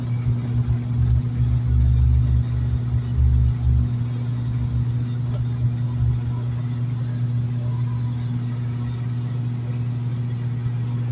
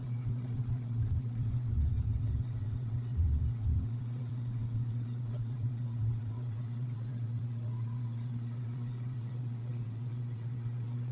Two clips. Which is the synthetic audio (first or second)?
second